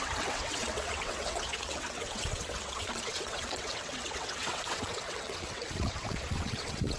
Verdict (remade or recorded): remade